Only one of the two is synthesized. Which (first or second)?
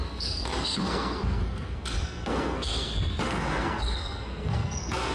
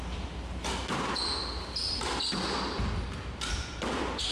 first